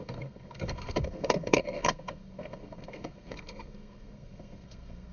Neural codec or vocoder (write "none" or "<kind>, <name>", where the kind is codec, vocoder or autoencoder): codec, SNAC